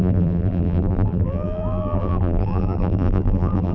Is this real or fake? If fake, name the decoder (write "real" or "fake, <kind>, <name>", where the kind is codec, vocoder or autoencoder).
fake, vocoder, BigVGAN v2